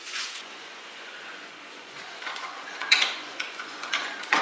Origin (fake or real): fake